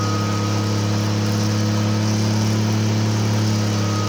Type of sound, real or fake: real